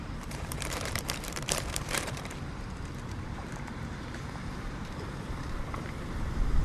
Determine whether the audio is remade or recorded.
remade